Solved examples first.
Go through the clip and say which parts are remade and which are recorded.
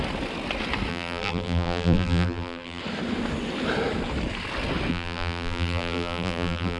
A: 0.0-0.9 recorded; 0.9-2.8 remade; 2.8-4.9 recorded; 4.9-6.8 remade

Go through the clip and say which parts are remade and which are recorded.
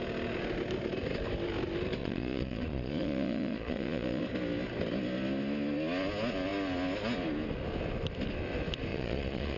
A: 0.0-2.0 recorded; 2.0-4.2 remade; 4.2-8.9 recorded; 8.9-9.6 remade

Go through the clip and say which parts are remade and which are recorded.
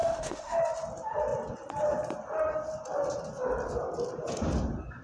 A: 0.0-0.6 remade; 0.6-5.0 recorded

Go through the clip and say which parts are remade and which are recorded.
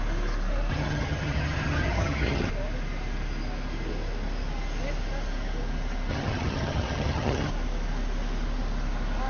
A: 0.0-0.7 recorded; 0.7-2.5 remade; 2.5-6.1 recorded; 6.1-7.5 remade; 7.5-9.3 recorded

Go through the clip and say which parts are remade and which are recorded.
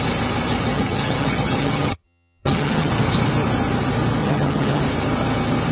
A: 0.0-0.7 recorded; 0.7-2.9 remade; 2.9-4.2 recorded; 4.2-4.8 remade; 4.8-5.7 recorded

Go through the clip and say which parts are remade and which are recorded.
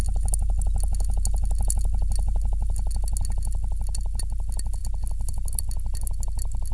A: 0.0-6.7 recorded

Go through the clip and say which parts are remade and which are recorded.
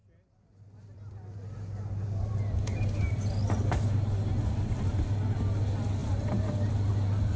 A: 0.0-7.4 recorded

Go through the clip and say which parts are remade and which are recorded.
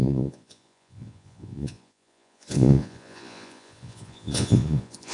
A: 0.0-5.1 remade